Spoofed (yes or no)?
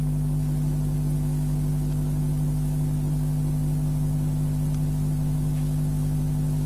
no